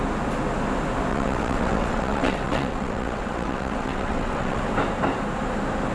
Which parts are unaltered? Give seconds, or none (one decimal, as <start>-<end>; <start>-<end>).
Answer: 0.0-1.1; 4.6-5.9